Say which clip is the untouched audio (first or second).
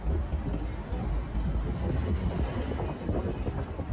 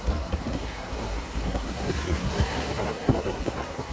first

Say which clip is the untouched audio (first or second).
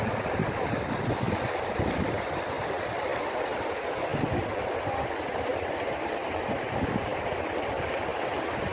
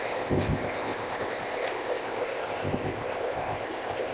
first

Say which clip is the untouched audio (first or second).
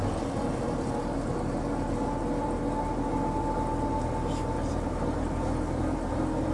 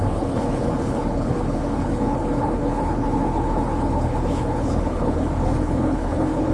first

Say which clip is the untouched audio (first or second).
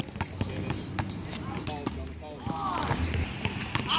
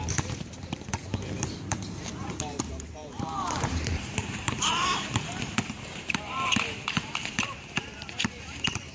first